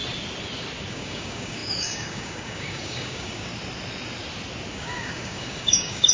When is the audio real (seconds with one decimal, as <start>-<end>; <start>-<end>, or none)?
0.0-0.9; 3.5-4.7